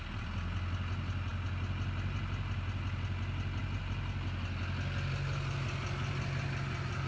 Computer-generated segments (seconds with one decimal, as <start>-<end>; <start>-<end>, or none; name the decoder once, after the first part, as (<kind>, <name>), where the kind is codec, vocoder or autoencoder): none